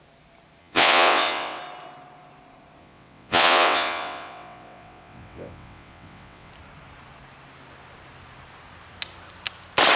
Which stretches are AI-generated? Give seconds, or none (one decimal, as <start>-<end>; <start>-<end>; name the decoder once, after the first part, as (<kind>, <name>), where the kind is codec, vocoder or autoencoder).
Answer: 0.6-1.6 (vocoder, WaveNeXt); 2.8-6.5